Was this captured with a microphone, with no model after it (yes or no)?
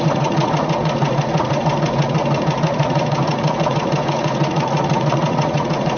no